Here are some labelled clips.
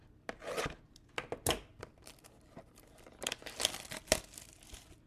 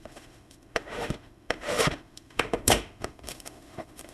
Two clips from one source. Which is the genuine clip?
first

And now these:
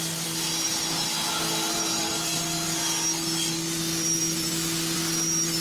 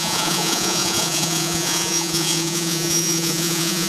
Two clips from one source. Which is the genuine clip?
first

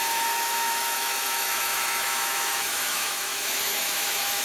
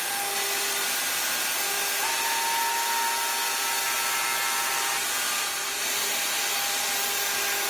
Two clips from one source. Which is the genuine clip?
second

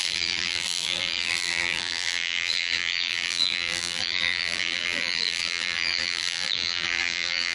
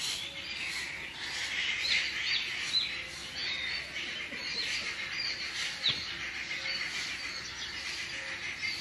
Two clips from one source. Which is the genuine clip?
second